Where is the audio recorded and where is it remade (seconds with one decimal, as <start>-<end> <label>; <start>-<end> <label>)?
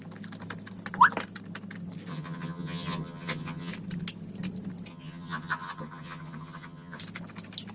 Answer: 0.0-2.1 recorded; 2.1-3.7 remade; 3.7-4.9 recorded; 4.9-7.0 remade; 7.0-7.7 recorded